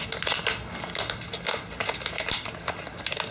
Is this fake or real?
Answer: real